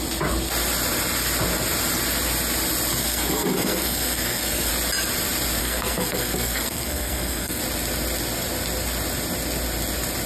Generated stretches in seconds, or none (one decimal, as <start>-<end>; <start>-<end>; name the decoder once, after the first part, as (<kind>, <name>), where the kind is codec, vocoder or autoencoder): 3.0-4.7 (codec, SNAC); 5.6-7.6